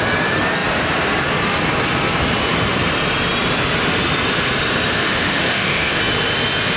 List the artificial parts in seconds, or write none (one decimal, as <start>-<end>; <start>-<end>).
5.0-6.0